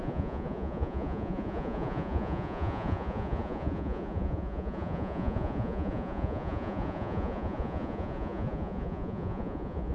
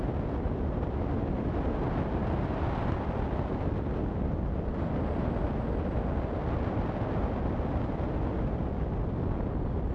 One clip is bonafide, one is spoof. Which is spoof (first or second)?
first